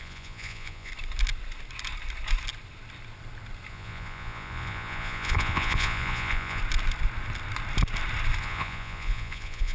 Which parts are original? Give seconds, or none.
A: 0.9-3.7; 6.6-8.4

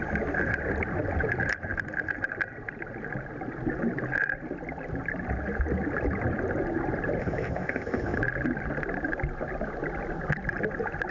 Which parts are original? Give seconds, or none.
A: 0.0-7.2; 8.2-11.1

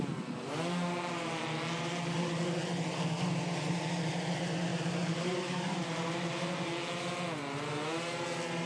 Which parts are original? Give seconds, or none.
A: 0.0-4.7; 5.4-8.7

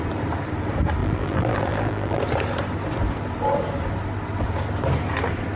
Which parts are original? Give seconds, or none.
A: 0.0-1.0; 2.2-5.6

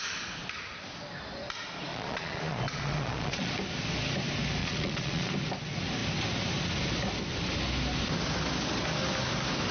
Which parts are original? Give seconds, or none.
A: 0.0-1.9; 3.5-4.6; 5.3-9.7

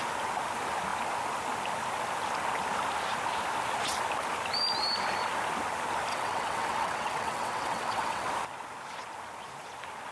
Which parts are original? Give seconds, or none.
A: 0.0-6.1; 8.3-10.1

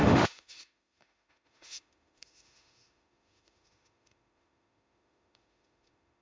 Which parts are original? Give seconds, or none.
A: none

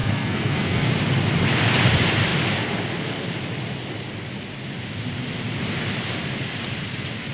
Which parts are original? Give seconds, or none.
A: 0.9-7.3